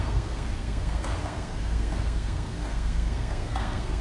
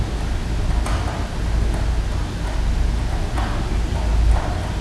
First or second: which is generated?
first